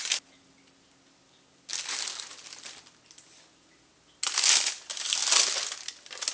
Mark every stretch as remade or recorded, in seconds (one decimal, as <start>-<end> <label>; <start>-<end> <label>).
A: 0.0-6.3 recorded